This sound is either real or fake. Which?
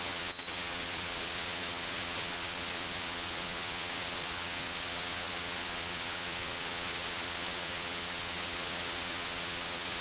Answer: fake